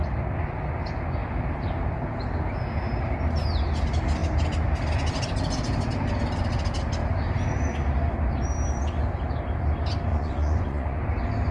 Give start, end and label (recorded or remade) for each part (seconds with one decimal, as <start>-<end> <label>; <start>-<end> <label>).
0.0-10.1 recorded; 10.1-11.0 remade; 11.0-11.5 recorded

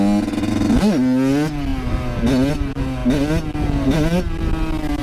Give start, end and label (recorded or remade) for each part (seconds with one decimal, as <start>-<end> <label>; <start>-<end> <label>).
0.0-5.0 recorded

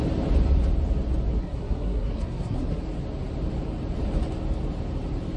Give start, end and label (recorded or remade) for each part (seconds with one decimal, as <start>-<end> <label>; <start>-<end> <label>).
0.0-1.4 recorded; 1.4-2.8 remade; 2.8-5.4 recorded